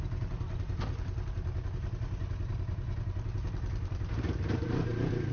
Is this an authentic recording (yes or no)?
yes